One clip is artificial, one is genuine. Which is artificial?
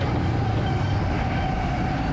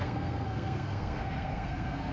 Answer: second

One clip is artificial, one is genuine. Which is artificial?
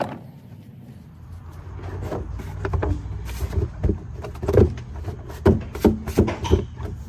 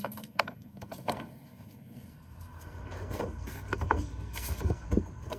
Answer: second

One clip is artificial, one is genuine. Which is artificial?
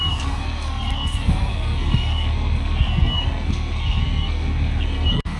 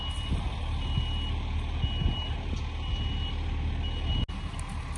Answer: first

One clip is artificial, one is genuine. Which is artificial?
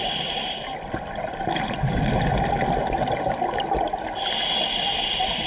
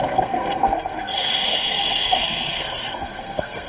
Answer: second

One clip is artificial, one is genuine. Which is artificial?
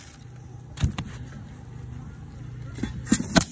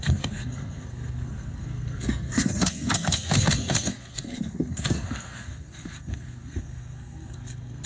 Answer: second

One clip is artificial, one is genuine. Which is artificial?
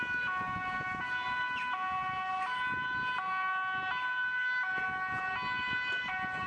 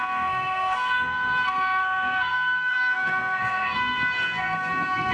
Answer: second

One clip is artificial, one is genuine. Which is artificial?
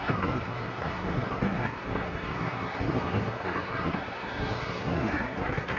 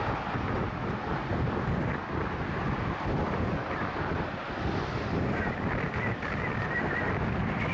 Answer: first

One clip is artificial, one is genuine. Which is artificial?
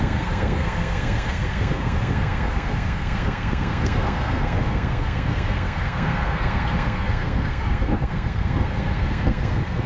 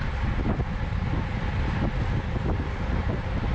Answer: first